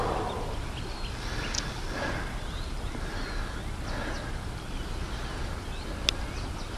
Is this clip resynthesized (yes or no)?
no